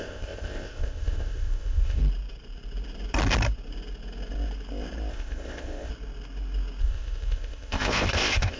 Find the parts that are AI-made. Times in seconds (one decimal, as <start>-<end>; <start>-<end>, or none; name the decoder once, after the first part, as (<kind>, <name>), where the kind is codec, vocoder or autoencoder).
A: 0.0-2.0 (codec, ZipCodec); 5.1-5.9; 6.8-8.6